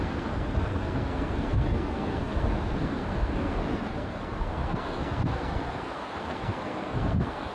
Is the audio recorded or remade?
remade